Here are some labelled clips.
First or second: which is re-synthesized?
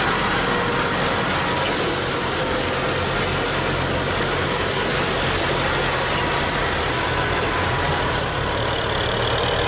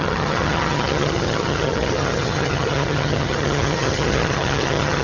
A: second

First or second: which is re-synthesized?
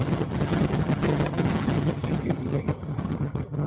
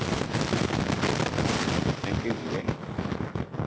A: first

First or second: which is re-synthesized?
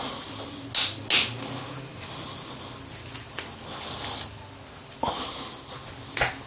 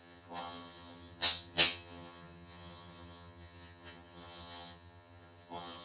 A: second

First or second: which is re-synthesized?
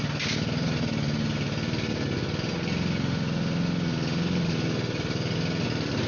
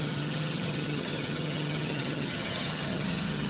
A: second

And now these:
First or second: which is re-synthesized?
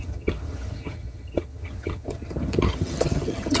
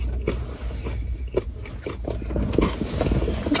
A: first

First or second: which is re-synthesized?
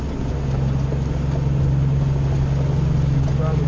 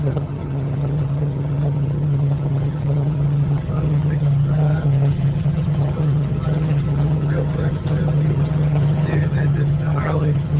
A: second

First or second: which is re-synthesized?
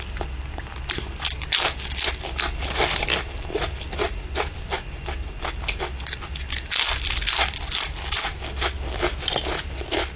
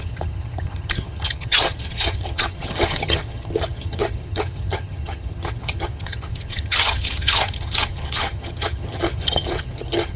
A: second